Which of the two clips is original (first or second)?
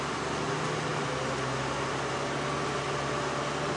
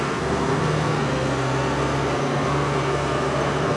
first